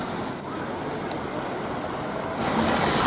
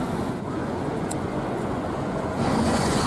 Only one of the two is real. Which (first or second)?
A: first